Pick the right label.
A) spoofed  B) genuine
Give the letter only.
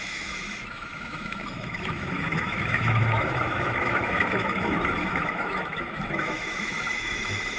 A